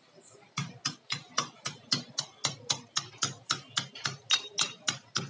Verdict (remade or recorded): recorded